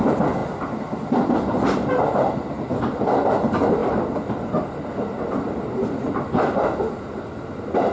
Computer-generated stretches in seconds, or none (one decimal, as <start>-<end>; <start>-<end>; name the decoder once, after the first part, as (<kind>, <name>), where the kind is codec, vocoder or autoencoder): none